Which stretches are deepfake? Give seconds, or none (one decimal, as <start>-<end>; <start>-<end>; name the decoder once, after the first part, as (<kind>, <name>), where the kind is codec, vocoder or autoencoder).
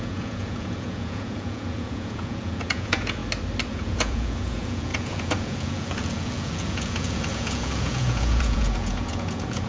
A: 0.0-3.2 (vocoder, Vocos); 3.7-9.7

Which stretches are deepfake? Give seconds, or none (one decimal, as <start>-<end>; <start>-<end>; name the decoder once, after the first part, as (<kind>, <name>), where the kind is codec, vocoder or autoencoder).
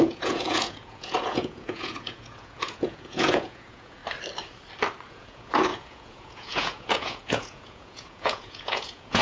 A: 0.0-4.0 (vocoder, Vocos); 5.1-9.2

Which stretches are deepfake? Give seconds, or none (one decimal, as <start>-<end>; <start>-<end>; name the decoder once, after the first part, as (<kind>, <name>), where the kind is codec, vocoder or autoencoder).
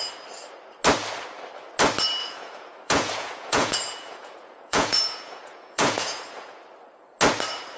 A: 2.2-6.5 (vocoder, Vocos)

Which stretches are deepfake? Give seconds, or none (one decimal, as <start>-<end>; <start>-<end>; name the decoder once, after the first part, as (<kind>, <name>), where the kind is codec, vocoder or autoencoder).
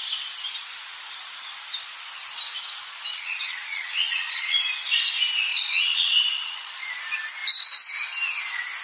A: 3.1-4.6 (vocoder, Vocos); 5.5-6.9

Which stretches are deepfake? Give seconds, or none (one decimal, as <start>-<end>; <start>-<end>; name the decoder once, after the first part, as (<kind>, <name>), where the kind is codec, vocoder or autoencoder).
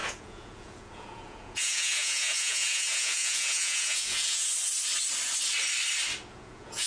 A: 0.0-4.5 (vocoder, Vocos); 6.3-6.9